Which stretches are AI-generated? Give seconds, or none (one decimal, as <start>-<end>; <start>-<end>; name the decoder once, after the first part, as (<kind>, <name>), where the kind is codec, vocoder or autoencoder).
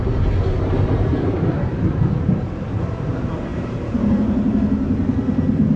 0.0-3.1 (vocoder, BigVGAN v2); 3.5-4.6